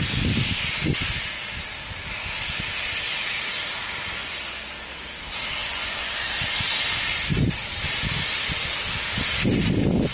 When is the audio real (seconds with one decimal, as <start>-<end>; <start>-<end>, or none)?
0.0-4.2; 4.9-5.6; 6.3-10.1